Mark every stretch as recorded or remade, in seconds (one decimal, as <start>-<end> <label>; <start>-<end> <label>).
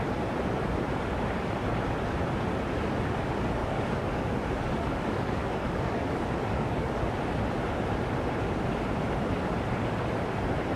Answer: 0.0-3.6 recorded; 3.6-7.0 remade; 7.0-10.8 recorded